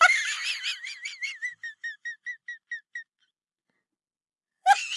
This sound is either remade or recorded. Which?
recorded